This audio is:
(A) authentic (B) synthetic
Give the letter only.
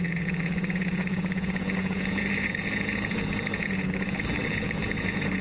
B